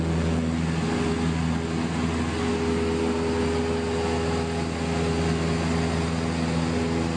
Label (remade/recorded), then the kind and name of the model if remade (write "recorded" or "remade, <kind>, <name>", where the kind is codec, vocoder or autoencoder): recorded